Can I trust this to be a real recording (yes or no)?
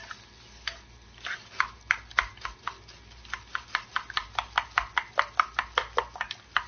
yes